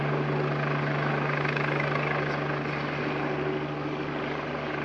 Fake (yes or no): no